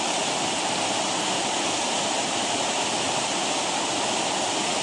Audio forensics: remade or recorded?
recorded